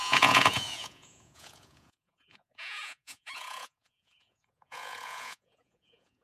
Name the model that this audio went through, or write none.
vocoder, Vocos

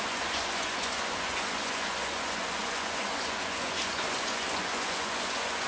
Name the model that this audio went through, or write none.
vocoder, Vocos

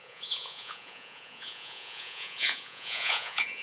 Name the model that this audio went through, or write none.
vocoder, Vocos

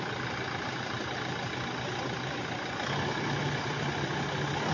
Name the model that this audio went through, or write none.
none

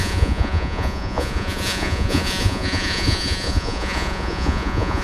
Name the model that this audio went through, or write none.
vocoder, Vocos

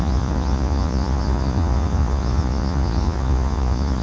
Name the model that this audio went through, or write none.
vocoder, Vocos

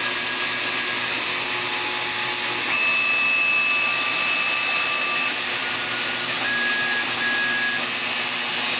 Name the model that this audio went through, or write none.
none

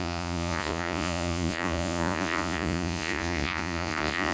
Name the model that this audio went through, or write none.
vocoder, Vocos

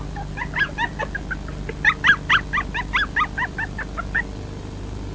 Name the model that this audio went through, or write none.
none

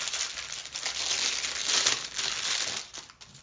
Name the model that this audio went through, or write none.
none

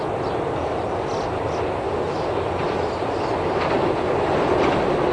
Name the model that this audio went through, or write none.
none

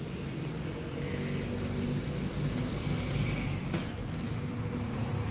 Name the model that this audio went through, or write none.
none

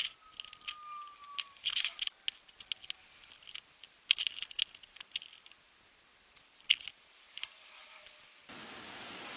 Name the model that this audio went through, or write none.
none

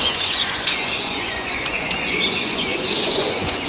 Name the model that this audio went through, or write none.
vocoder, Vocos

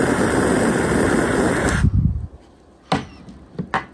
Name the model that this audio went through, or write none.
none